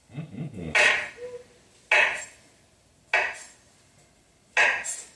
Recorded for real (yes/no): yes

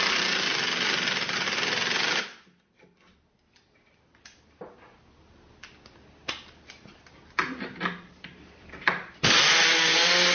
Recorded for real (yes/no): yes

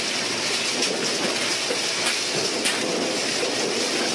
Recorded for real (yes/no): yes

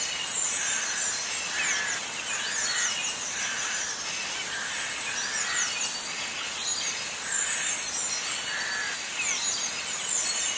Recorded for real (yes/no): yes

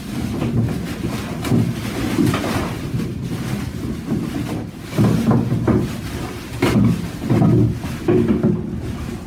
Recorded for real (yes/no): yes